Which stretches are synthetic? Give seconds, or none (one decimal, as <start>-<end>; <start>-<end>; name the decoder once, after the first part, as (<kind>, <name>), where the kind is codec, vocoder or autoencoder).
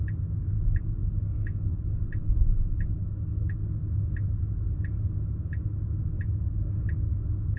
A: 1.0-2.1 (autoencoder, DAC-VAE); 3.0-3.6